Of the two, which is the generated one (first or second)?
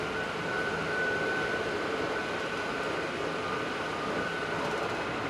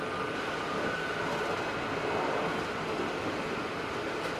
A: first